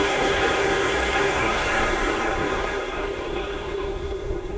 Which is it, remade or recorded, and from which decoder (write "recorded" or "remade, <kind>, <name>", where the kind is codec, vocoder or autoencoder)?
remade, codec, SNAC